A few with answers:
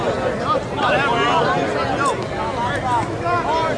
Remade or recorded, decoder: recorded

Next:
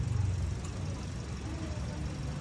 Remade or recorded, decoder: recorded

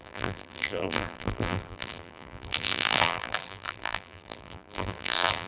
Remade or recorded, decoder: remade, vocoder, BigVGAN v2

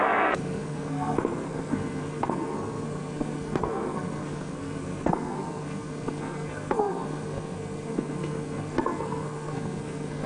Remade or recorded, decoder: remade, codec, SNAC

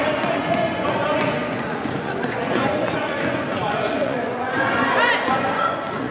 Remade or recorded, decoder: remade, vocoder, Vocos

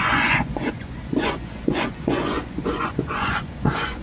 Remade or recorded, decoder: remade, vocoder, Vocos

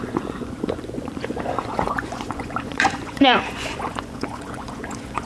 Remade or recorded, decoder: remade, vocoder, Vocos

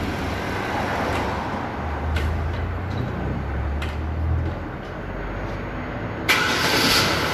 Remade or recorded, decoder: recorded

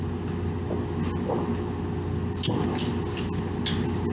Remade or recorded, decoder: recorded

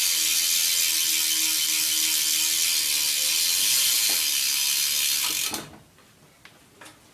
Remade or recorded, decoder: recorded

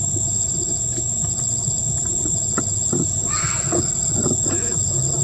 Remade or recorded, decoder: recorded